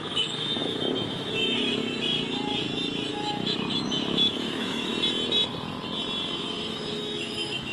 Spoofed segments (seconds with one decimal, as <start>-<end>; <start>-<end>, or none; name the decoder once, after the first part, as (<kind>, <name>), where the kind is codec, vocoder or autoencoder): 0.0-1.8 (autoencoder, DAC-VAE); 3.1-4.9; 6.4-7.7